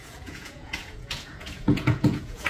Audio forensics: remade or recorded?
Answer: remade